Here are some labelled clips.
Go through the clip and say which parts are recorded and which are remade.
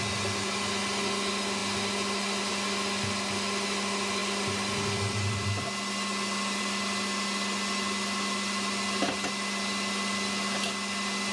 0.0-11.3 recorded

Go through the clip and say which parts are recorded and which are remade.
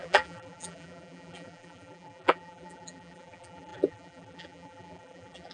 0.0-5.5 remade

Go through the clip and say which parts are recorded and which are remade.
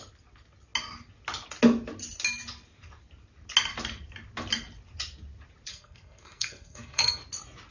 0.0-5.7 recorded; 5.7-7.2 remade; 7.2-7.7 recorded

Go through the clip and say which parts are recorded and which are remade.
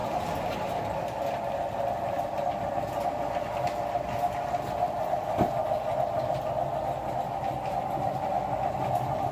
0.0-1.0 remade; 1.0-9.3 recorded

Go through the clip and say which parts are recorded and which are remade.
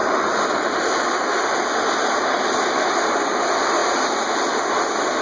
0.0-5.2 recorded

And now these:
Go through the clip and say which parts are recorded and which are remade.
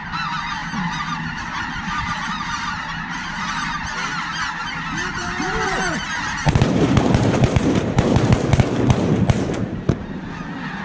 0.0-0.6 recorded; 0.6-3.5 remade; 3.5-5.2 recorded; 5.2-8.3 remade; 8.3-10.8 recorded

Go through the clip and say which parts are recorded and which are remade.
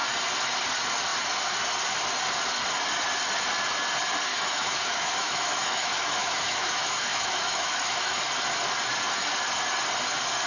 0.0-4.3 recorded; 4.3-8.2 remade; 8.2-10.5 recorded